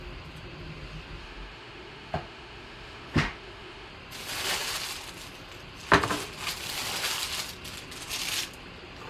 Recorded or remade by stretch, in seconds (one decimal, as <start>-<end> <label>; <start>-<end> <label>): 0.0-1.2 recorded; 1.2-3.9 remade; 3.9-9.1 recorded